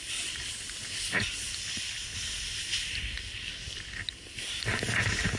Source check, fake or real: real